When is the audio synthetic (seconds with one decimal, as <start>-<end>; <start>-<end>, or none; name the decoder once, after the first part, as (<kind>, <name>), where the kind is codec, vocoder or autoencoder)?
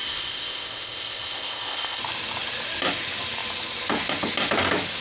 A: 0.0-2.0 (codec, ZipCodec)